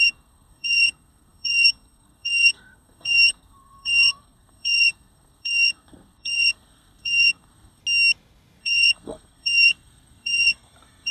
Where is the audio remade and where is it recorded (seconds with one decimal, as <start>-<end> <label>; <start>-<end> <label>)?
0.0-7.8 remade; 7.8-8.6 recorded; 8.6-11.1 remade